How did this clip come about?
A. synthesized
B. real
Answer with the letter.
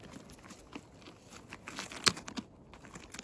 B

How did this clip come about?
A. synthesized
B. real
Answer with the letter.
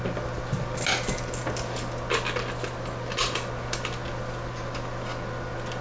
B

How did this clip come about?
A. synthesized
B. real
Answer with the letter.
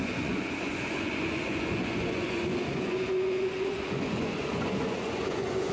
A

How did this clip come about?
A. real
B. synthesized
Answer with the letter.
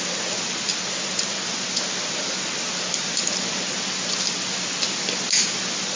A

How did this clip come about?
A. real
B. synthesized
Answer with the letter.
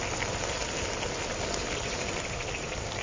A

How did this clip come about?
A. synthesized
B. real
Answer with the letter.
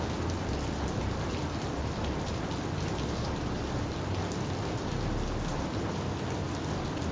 B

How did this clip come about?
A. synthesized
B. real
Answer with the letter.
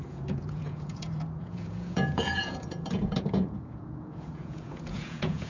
A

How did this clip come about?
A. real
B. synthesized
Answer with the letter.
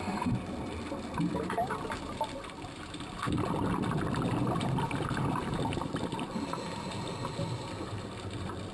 A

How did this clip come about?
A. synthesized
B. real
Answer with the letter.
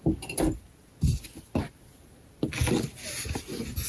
B